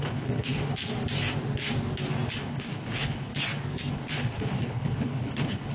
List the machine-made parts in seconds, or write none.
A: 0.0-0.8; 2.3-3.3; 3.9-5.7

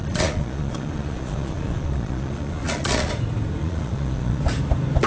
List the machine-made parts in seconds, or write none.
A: 0.0-3.1; 3.6-4.4

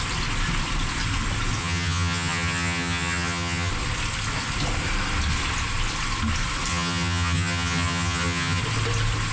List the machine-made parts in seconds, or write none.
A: 1.6-3.7; 6.7-8.6